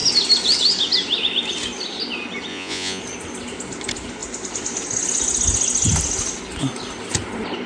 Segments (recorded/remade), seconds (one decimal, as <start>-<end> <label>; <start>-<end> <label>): 0.0-2.5 recorded; 2.5-3.0 remade; 3.0-7.7 recorded